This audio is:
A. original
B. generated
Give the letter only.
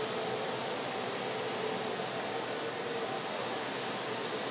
A